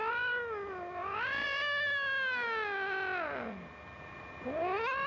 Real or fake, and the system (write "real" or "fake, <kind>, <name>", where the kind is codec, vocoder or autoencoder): real